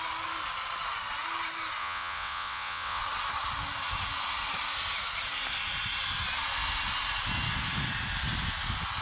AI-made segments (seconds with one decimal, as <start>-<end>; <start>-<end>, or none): 1.8-3.0